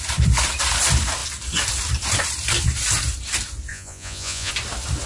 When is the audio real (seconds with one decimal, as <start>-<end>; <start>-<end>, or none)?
0.0-3.7; 4.5-5.1